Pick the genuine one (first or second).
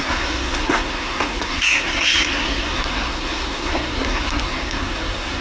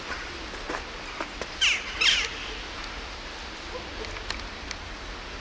second